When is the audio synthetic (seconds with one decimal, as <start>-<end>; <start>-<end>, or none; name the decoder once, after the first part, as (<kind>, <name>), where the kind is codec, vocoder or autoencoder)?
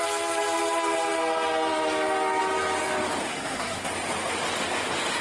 3.3-3.9 (codec, SNAC)